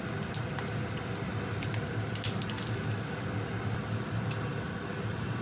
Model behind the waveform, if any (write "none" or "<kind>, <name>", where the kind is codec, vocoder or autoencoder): none